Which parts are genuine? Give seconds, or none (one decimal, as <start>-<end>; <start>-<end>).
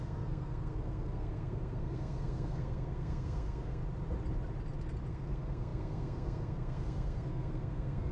3.8-5.1